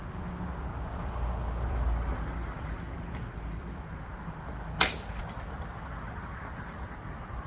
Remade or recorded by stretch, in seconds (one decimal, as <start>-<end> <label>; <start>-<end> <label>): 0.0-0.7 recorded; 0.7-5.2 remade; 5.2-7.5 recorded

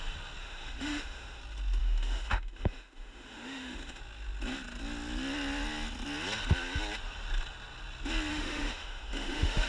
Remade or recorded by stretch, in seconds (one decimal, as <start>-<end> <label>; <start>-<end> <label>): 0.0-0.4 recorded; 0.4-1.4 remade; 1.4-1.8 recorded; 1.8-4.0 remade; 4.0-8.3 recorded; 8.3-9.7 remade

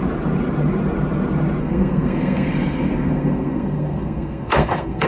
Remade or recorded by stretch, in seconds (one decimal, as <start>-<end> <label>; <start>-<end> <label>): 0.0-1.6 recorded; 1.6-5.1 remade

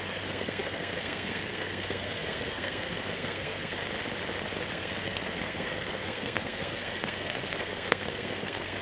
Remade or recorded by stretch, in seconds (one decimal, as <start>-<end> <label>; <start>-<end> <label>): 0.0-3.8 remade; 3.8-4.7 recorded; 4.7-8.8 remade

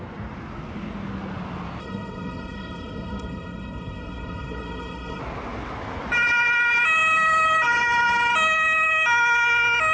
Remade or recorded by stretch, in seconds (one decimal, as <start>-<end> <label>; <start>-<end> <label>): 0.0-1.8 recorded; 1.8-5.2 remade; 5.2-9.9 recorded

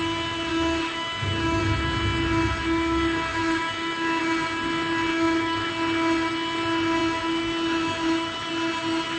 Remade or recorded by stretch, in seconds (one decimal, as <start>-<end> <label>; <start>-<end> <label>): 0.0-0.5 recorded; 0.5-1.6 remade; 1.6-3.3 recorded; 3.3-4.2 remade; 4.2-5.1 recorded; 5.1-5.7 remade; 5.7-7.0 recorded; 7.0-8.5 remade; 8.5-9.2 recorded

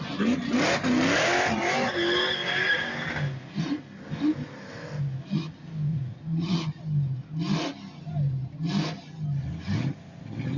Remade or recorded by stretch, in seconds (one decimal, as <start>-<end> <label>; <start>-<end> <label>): 0.0-5.9 recorded; 5.9-6.8 remade; 6.8-10.6 recorded

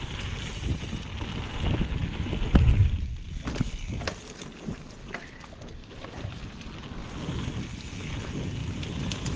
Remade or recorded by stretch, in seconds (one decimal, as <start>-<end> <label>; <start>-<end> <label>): 0.0-5.8 recorded; 5.8-6.4 remade; 6.4-8.6 recorded; 8.6-9.4 remade